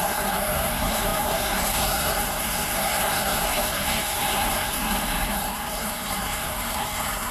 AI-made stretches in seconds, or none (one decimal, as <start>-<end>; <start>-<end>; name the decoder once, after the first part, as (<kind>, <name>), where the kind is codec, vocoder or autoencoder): 0.0-7.3 (codec, SNAC)